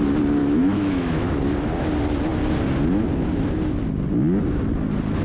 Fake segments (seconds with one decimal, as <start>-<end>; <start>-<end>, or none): 0.4-1.4